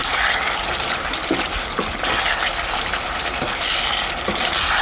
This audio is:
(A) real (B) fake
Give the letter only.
A